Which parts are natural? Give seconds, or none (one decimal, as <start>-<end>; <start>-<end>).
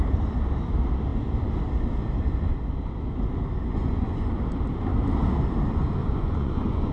0.0-3.7; 4.3-6.0